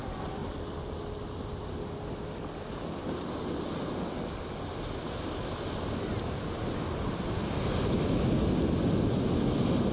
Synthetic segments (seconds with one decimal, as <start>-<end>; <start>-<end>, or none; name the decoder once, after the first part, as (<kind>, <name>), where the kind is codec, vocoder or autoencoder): none